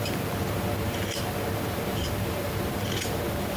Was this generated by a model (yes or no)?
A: yes